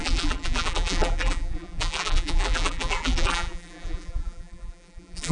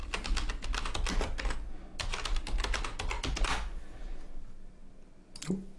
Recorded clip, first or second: second